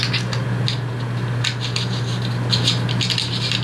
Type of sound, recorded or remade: recorded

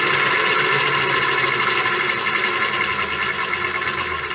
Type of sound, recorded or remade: recorded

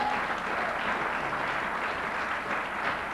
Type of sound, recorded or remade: recorded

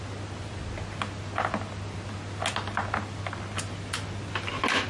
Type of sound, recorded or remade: recorded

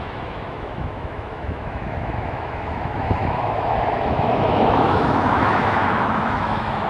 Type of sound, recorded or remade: remade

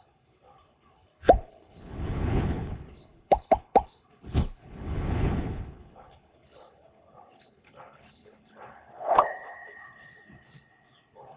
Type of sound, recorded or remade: remade